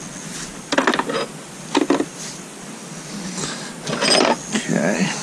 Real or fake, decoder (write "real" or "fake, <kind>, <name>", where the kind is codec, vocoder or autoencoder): real